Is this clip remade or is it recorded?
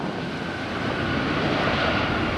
recorded